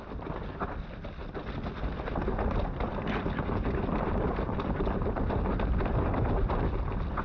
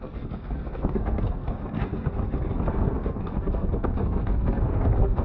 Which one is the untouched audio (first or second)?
first